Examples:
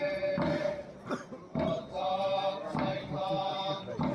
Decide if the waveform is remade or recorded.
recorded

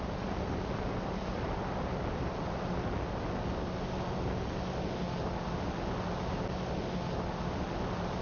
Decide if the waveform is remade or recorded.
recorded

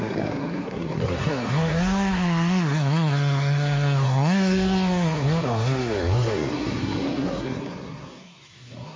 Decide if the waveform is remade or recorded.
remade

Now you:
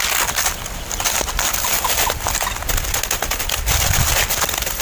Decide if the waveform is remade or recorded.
remade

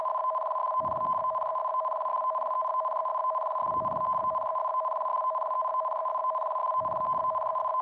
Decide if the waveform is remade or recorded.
recorded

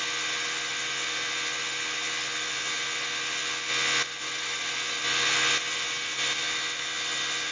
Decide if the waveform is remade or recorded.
recorded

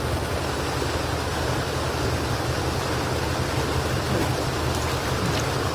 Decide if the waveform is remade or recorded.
recorded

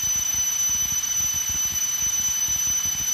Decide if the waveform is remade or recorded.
remade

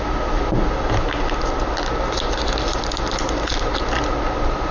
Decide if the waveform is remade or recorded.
recorded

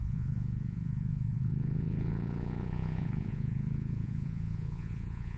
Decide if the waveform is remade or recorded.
remade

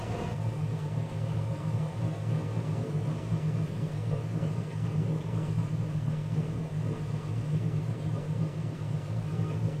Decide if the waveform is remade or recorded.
remade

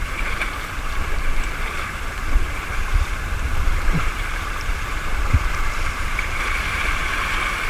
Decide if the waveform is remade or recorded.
remade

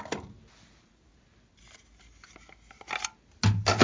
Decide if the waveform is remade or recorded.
recorded